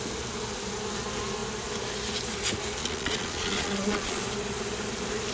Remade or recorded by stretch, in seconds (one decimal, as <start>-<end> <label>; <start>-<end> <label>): 0.0-2.8 recorded; 2.8-4.2 remade; 4.2-5.3 recorded